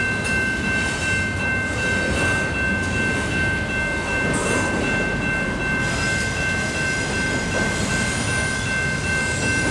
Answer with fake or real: real